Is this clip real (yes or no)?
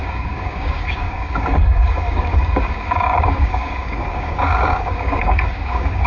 no